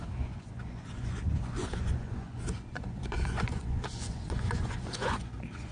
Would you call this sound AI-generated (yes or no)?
yes